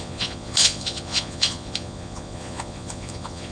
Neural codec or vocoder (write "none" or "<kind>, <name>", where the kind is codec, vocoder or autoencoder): vocoder, Vocos